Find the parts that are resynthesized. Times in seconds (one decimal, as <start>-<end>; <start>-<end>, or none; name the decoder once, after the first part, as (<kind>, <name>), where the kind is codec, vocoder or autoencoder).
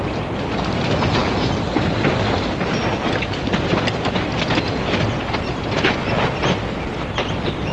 none